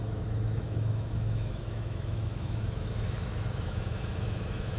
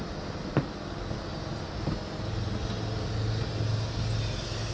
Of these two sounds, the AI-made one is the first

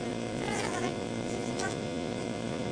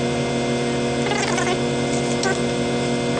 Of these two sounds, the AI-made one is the first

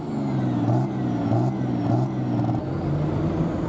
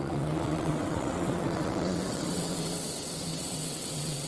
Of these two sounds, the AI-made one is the second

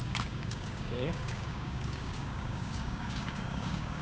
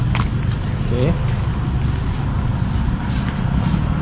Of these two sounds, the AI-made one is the first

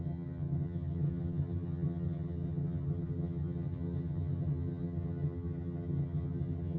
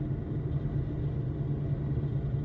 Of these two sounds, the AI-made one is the first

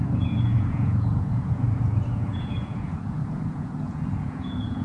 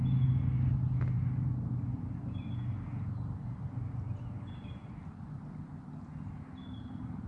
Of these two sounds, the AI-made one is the first